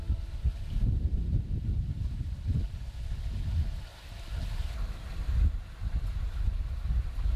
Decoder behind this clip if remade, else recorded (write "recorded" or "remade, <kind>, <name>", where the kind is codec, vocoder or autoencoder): recorded